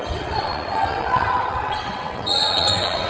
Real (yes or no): no